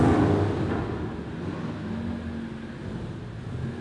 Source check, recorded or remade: recorded